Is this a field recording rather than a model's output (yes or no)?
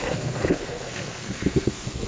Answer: no